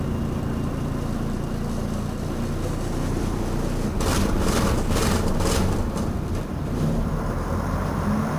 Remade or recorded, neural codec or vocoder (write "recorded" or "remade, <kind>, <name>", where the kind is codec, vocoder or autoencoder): remade, vocoder, BigVGAN v2